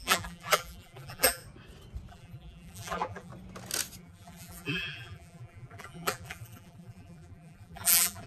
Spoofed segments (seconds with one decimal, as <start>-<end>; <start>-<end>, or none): 0.0-1.4; 2.1-3.3; 4.0-8.3